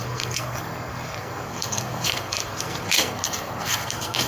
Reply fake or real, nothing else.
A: fake